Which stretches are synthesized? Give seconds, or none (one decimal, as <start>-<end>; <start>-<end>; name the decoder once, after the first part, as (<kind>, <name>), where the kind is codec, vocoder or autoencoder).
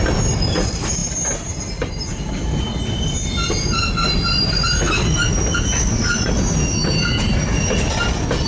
none